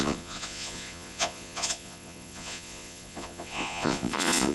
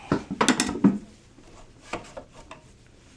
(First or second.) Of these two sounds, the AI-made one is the first